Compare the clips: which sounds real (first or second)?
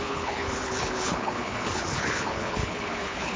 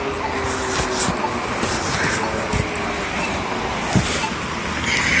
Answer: second